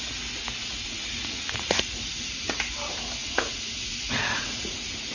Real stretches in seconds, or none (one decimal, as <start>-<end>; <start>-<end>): 0.0-0.6; 2.6-3.2